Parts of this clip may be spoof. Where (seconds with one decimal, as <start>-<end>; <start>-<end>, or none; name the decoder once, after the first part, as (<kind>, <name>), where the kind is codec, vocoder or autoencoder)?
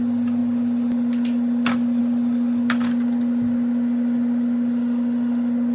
none